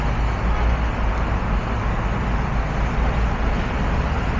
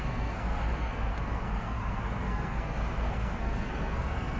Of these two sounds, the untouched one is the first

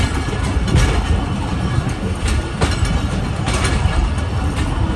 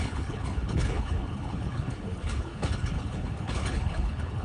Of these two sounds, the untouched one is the first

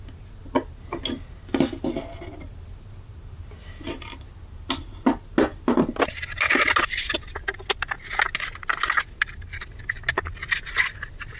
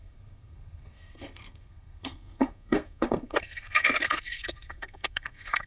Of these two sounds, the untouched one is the first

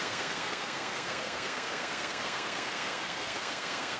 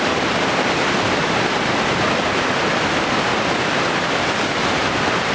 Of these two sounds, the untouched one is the second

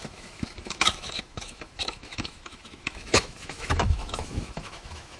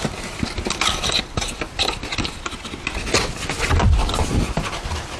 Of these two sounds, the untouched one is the second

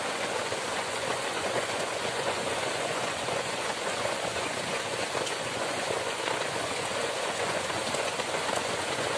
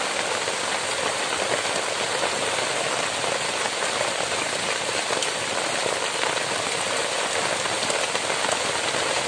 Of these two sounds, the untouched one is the second